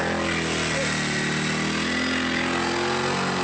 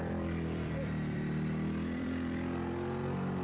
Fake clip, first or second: second